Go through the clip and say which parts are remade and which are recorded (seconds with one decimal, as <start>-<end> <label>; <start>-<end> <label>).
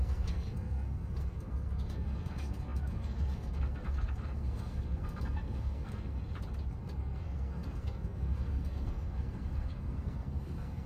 0.0-6.2 remade; 6.2-6.8 recorded; 6.8-10.9 remade